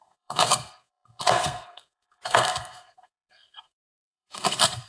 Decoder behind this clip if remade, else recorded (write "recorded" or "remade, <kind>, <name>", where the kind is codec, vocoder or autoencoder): remade, codec, SNAC